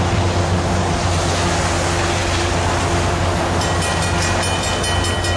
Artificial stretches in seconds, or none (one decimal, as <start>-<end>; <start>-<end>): none